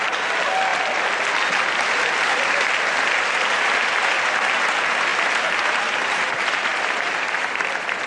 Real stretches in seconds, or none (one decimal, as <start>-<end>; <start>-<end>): 0.0-6.7; 7.4-8.1